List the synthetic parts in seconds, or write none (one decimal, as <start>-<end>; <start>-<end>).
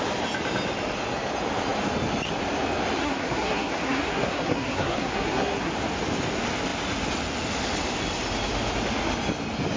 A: 3.0-5.7